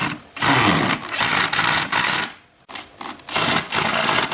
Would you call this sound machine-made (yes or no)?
no